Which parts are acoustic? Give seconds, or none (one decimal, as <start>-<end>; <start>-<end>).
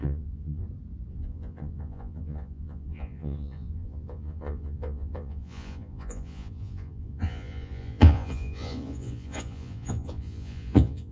0.6-1.1